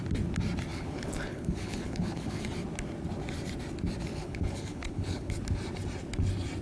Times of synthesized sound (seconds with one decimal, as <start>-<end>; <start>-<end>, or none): 0.7-2.4; 4.1-5.3